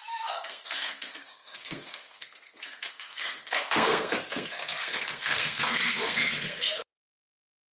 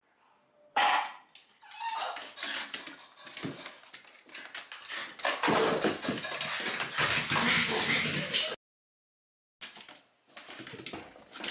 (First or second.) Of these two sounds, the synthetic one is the first